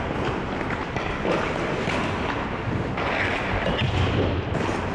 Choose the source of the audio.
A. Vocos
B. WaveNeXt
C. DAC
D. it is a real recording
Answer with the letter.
D